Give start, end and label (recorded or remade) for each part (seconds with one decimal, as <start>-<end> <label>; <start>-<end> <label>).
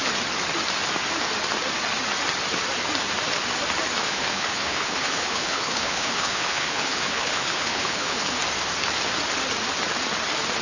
0.0-4.0 recorded; 4.0-8.4 remade; 8.4-10.6 recorded